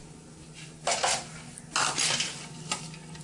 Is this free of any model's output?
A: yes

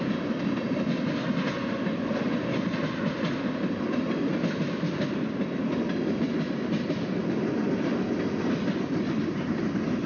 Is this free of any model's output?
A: yes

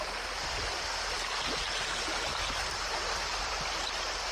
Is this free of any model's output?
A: yes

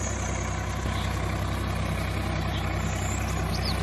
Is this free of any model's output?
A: yes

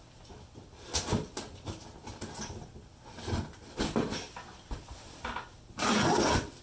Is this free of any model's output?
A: yes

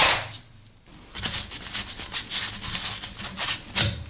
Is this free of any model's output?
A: yes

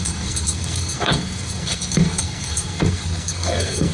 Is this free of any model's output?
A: no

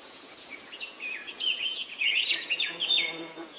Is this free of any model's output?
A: no